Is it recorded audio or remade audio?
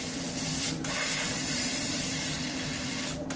remade